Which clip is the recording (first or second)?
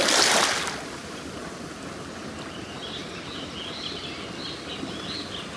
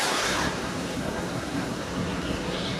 first